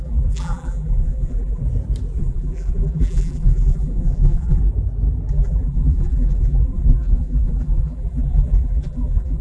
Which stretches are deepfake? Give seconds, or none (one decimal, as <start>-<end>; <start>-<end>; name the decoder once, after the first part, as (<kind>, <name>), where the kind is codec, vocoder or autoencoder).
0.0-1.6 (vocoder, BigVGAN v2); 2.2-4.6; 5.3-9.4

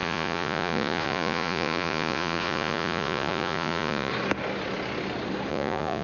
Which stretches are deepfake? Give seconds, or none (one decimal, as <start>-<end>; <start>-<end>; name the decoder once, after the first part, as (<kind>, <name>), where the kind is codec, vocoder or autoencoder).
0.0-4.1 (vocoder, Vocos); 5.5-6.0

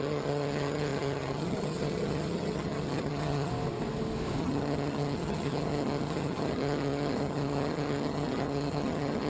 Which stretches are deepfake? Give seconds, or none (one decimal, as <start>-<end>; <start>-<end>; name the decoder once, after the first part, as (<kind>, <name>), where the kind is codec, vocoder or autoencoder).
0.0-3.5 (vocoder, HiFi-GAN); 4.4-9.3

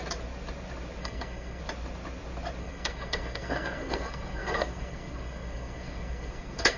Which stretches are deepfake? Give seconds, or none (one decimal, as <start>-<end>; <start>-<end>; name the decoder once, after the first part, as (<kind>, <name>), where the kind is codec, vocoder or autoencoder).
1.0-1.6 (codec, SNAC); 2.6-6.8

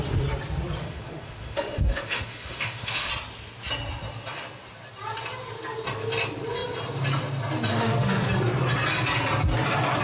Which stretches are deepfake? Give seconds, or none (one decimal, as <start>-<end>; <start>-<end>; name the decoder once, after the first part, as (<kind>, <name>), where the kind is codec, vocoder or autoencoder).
0.8-3.1 (autoencoder, DAC-VAE); 7.7-8.3

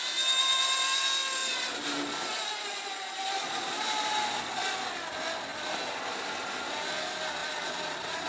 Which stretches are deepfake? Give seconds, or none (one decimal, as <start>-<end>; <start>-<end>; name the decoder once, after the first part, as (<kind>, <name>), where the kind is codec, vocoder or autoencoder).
none

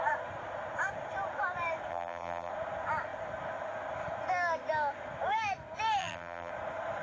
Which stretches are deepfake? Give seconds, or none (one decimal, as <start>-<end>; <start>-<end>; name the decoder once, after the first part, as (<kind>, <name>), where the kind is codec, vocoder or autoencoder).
1.9-2.5 (vocoder, BigVGAN v2); 6.0-6.5

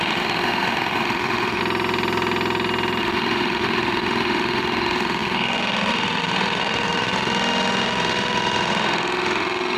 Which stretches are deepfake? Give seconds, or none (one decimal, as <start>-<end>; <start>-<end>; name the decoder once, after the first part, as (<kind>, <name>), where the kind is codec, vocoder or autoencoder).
0.0-1.6 (autoencoder, DAC-VAE); 3.0-9.8